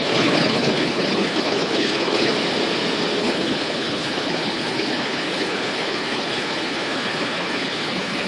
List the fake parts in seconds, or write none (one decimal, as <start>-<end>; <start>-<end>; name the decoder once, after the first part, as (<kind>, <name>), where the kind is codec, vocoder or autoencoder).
0.0-2.3 (codec, HILCodec); 3.2-8.3